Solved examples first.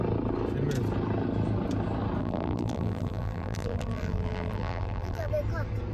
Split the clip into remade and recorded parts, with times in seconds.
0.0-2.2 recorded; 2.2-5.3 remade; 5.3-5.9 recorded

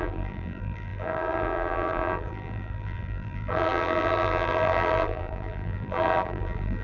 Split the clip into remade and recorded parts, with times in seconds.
0.0-6.8 remade

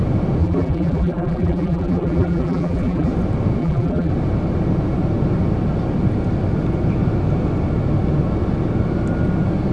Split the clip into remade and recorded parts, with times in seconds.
0.0-0.4 recorded; 0.4-3.1 remade; 3.1-3.6 recorded; 3.6-4.1 remade; 4.1-9.7 recorded

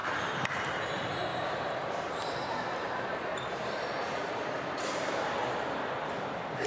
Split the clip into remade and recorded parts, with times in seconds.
0.0-0.8 remade; 0.8-1.3 recorded; 1.3-5.3 remade; 5.3-6.7 recorded

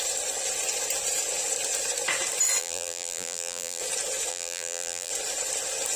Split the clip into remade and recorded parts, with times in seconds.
0.0-2.6 recorded; 2.6-3.8 remade; 3.8-4.3 recorded; 4.3-5.1 remade; 5.1-6.0 recorded